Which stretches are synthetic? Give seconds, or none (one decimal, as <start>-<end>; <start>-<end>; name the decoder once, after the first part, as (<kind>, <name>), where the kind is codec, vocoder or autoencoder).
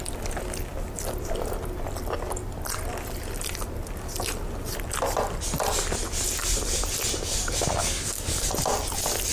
7.8-8.5 (codec, DAC)